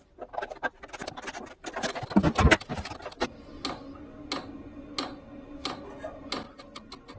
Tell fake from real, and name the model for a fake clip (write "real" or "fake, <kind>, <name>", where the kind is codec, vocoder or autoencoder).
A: real